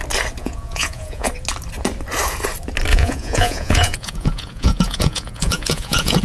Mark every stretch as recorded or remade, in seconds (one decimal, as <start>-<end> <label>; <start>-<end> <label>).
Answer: 0.0-0.4 recorded; 0.4-1.3 remade; 1.3-2.9 recorded; 2.9-6.2 remade